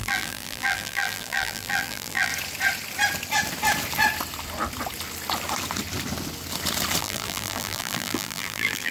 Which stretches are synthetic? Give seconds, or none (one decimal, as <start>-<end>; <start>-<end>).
0.0-2.3; 7.0-8.9